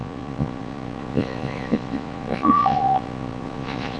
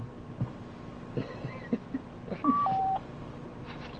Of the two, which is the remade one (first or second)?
first